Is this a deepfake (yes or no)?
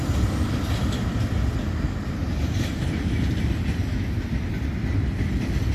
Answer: no